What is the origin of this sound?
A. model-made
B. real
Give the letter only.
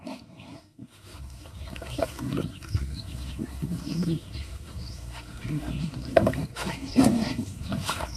A